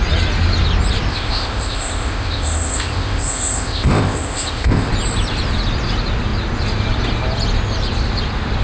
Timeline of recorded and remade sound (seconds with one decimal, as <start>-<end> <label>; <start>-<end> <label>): 0.0-1.1 recorded; 1.1-4.9 remade; 4.9-8.6 recorded

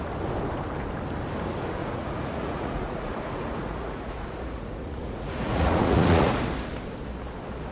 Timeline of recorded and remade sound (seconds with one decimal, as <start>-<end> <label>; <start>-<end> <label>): 0.0-1.8 recorded; 1.8-6.4 remade; 6.4-7.7 recorded

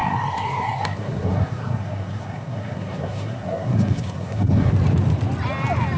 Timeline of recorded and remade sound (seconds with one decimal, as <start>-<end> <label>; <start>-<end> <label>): 0.0-4.7 remade; 4.7-6.0 recorded